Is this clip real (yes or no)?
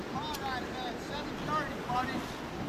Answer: yes